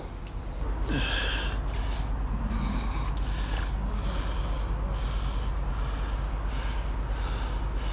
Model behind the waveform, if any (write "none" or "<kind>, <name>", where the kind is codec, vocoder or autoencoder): none